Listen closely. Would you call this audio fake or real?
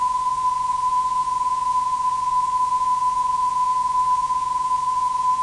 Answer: fake